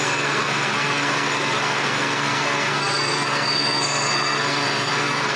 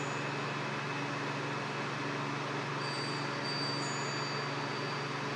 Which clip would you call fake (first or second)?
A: first